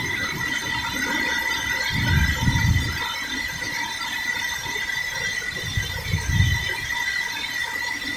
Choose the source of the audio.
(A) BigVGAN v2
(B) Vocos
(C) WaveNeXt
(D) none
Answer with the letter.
D